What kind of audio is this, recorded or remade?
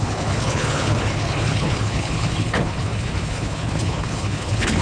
remade